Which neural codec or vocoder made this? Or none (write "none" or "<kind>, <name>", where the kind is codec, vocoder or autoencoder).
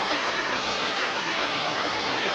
codec, SNAC